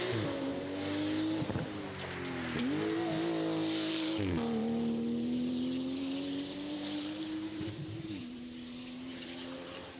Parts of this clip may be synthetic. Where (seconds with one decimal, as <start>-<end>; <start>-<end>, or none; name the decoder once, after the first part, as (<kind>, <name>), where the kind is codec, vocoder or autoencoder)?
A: 0.0-0.5 (vocoder, BigVGAN v2); 3.9-10.0